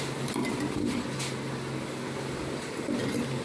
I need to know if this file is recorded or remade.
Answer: recorded